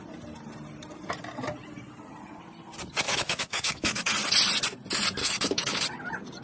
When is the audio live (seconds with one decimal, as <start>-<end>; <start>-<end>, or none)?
0.0-3.1; 4.1-5.2; 5.8-6.4